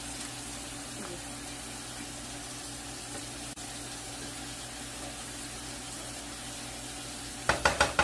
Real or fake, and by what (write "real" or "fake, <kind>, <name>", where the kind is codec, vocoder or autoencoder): real